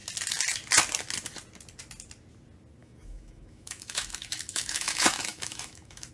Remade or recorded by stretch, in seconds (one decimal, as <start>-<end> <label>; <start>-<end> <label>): 0.0-2.8 recorded; 2.8-6.1 remade